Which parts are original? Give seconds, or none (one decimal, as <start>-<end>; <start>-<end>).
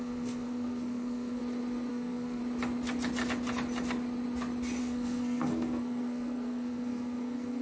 1.4-1.9; 2.4-4.8